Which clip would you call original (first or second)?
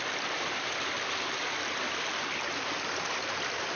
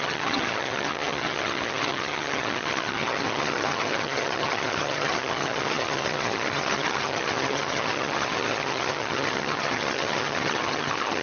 first